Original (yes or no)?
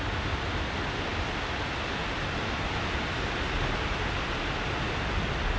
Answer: yes